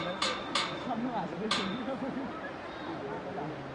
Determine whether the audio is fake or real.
real